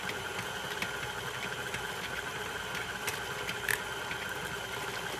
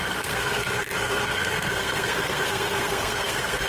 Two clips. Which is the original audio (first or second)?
first